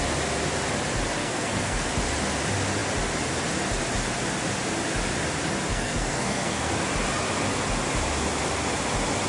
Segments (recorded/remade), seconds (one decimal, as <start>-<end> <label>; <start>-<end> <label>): 0.0-1.2 recorded; 1.2-2.0 remade; 2.0-5.7 recorded; 5.7-6.7 remade; 6.7-9.3 recorded

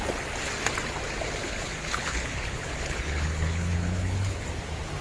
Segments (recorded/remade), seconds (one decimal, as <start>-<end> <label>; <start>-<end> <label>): 0.0-1.4 recorded; 1.4-4.4 remade; 4.4-5.0 recorded

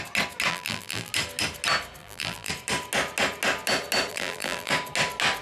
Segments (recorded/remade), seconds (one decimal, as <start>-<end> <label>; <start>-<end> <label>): 0.0-0.5 recorded; 0.5-1.1 remade; 1.1-2.0 recorded; 2.0-2.5 remade; 2.5-4.1 recorded; 4.1-4.7 remade; 4.7-5.4 recorded